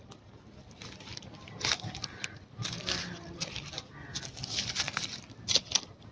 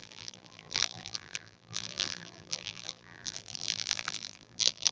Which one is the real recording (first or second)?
first